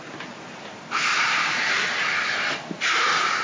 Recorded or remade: remade